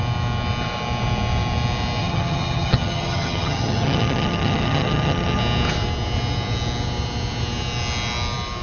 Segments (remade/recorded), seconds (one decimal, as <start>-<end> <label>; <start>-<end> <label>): 0.0-2.0 recorded; 2.0-5.4 remade; 5.4-8.6 recorded

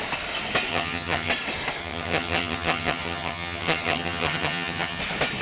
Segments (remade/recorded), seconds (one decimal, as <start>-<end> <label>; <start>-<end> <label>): 0.0-0.7 recorded; 0.7-1.3 remade; 1.3-1.8 recorded; 1.8-5.0 remade; 5.0-5.4 recorded